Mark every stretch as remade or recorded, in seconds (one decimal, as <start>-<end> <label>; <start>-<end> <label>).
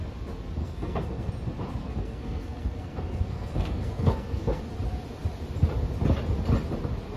0.0-0.6 recorded; 0.6-1.3 remade; 1.3-1.8 recorded; 1.8-4.6 remade; 4.6-7.2 recorded